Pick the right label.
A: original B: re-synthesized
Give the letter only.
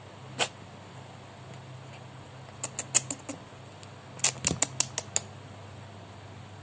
A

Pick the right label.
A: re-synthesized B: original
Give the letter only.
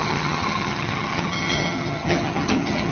A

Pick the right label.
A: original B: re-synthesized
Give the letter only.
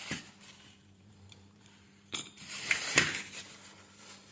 B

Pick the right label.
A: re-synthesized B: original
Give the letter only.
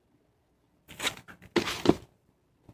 B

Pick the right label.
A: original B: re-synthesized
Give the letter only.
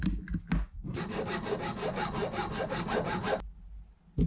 A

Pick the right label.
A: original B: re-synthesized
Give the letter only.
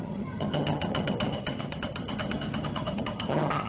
B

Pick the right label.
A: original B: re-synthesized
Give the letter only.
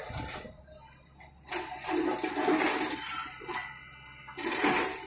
A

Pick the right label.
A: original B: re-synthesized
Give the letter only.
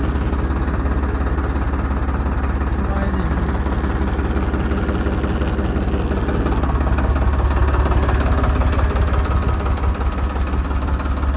A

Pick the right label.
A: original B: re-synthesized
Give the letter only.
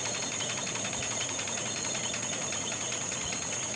B